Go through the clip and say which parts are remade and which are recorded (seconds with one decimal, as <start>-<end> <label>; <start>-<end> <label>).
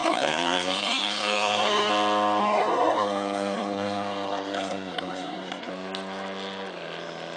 0.0-1.9 remade; 1.9-2.4 recorded; 2.4-5.7 remade; 5.7-7.4 recorded